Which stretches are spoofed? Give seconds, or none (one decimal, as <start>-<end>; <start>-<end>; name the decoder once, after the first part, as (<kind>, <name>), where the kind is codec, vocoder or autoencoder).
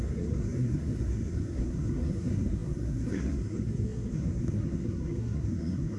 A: 0.0-6.0 (codec, SNAC)